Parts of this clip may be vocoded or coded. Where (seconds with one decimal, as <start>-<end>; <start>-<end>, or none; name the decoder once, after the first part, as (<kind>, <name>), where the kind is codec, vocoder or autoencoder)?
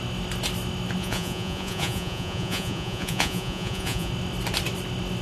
1.0-4.1 (vocoder, Vocos)